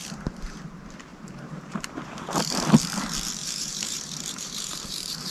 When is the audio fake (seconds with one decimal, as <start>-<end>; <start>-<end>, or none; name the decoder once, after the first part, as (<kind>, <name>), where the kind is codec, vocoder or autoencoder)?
1.1-1.7 (vocoder, BigVGAN v2); 3.4-5.3